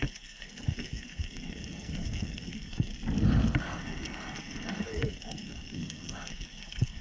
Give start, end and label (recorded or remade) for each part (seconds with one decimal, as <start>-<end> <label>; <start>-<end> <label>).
0.0-2.9 remade; 2.9-3.6 recorded; 3.6-7.0 remade